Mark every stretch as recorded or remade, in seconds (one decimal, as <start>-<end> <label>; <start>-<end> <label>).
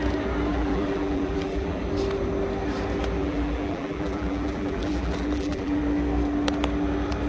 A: 0.0-0.5 recorded; 0.5-1.8 remade; 1.8-3.2 recorded; 3.2-5.8 remade; 5.8-7.3 recorded